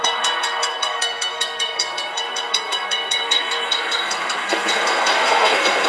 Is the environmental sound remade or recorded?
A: remade